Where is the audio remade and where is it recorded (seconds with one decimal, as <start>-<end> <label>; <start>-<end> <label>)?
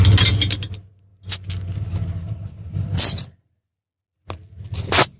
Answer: 0.0-5.2 recorded